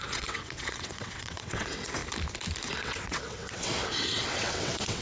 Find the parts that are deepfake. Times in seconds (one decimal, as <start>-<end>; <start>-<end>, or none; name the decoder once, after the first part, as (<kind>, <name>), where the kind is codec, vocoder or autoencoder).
0.0-2.0 (vocoder, WaveNeXt); 2.8-5.0